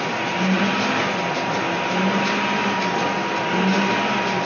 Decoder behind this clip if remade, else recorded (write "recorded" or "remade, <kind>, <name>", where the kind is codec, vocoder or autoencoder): recorded